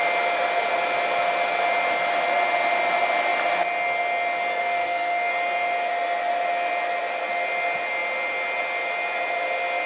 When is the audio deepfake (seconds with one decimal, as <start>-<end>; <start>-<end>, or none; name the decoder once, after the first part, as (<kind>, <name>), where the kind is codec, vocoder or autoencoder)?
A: 4.5-5.3 (codec, SNAC)